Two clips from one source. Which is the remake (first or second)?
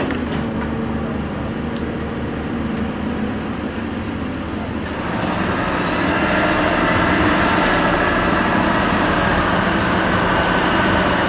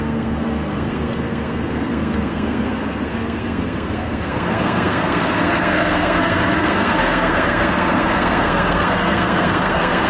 second